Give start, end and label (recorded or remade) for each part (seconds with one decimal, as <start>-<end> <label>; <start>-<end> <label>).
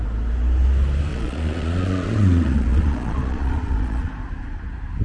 0.0-1.1 recorded; 1.1-4.1 remade; 4.1-5.0 recorded